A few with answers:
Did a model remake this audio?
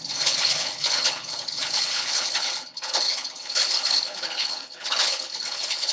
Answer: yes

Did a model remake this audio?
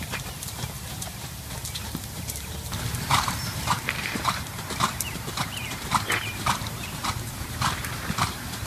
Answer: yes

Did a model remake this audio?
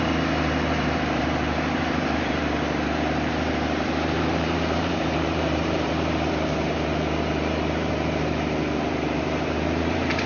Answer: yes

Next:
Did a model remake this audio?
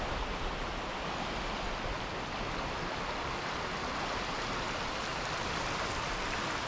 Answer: no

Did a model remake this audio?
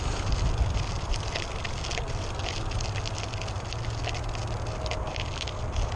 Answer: no